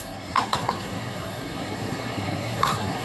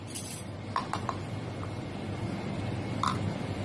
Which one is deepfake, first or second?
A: first